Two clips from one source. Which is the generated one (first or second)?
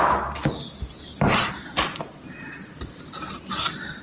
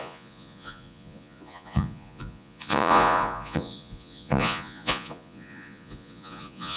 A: second